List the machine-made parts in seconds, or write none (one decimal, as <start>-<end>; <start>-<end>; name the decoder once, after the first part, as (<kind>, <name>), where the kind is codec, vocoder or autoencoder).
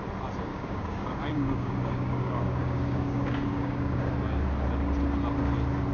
0.5-4.0 (codec, DAC)